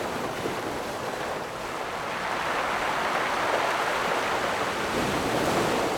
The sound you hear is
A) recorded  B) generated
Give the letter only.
A